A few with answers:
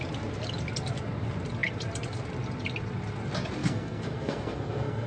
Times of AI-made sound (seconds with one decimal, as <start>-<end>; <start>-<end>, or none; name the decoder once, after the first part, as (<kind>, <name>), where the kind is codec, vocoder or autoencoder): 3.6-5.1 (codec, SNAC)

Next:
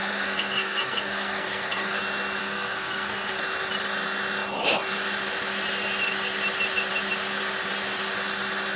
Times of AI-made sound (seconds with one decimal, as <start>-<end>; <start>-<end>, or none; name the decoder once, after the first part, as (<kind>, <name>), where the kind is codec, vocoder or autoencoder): 0.0-2.0 (codec, SNAC); 2.4-3.4

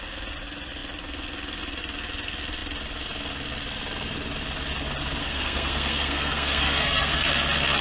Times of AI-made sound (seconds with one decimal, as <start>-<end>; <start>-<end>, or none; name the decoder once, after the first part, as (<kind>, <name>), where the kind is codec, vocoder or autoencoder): 5.2-7.3 (codec, SNAC)